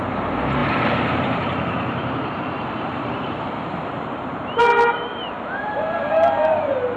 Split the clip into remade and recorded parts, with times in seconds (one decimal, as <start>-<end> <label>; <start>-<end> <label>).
0.0-6.2 remade; 6.2-7.0 recorded